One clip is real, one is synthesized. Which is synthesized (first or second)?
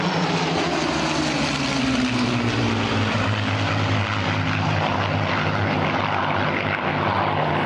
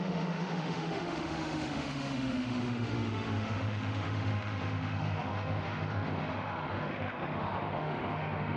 second